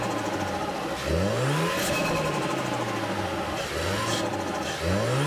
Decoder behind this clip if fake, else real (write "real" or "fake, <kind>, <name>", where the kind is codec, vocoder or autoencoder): real